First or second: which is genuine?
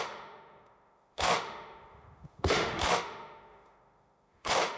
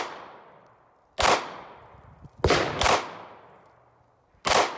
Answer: second